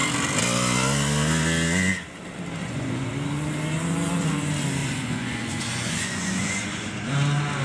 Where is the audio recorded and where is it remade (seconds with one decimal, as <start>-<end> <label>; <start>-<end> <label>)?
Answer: 0.0-2.6 recorded; 2.6-3.1 remade; 3.1-4.8 recorded; 4.8-6.9 remade; 6.9-7.6 recorded